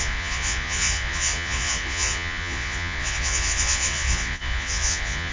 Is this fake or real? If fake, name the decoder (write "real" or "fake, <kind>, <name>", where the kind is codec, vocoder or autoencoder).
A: fake, vocoder, Vocos